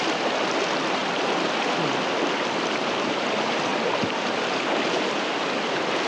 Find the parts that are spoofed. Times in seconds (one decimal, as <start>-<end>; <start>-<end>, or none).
none